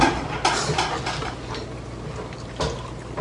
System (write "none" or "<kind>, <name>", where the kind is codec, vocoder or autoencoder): none